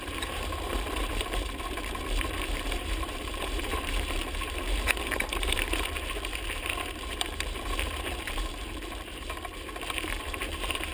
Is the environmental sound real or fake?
fake